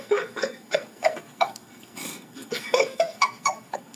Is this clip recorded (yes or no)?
no